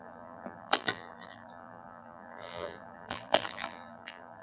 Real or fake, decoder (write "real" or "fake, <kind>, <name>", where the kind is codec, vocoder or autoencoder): fake, vocoder, BigVGAN v2